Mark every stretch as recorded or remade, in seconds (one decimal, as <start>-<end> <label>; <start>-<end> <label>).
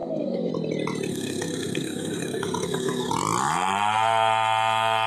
0.0-0.5 remade; 0.5-1.1 recorded; 1.1-3.1 remade; 3.1-5.1 recorded